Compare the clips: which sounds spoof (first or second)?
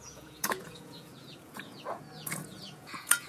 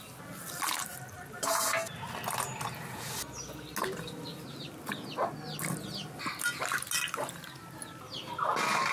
first